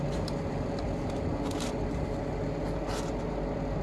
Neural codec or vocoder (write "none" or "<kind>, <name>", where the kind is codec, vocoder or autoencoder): none